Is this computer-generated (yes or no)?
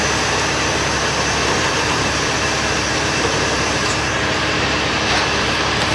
yes